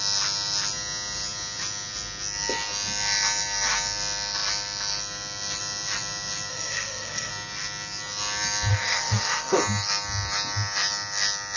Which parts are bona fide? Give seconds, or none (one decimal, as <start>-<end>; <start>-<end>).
0.0-6.5; 7.3-8.7; 9.6-11.6